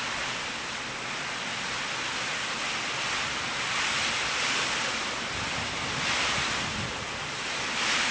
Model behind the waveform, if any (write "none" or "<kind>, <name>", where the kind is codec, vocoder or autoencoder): none